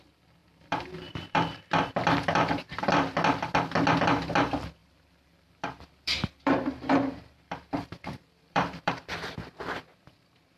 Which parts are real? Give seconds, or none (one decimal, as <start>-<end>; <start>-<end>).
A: 0.0-0.4; 2.9-4.8; 9.1-10.6

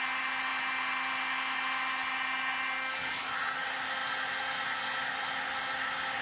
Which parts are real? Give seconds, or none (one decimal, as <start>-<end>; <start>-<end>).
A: 0.0-6.2

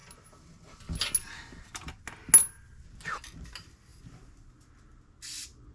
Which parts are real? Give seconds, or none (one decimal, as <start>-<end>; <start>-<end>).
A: 0.0-5.7

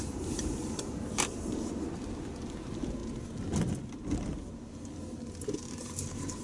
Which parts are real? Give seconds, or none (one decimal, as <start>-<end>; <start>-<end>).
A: 3.0-5.4

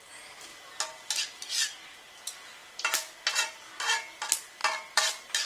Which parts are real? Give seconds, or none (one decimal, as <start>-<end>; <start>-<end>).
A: 0.0-1.6; 2.2-2.6; 3.5-4.6

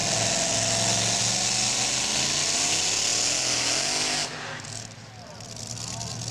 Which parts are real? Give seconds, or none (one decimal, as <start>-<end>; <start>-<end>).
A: 0.0-6.3

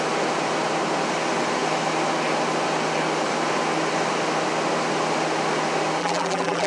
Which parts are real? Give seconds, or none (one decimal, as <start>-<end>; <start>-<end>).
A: 0.0-6.0

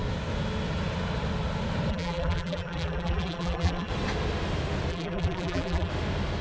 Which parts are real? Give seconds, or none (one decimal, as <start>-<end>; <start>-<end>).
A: 0.0-1.9; 3.9-4.9; 5.9-6.4